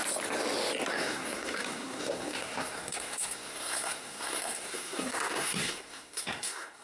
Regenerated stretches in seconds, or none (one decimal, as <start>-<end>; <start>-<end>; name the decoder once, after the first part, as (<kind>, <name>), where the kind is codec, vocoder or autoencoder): 0.9-6.8 (codec, SNAC)